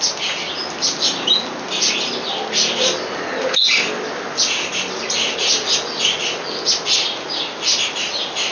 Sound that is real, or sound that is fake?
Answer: real